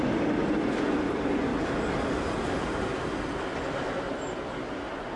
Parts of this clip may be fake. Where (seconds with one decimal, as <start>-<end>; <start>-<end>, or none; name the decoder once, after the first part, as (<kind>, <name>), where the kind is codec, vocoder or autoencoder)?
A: none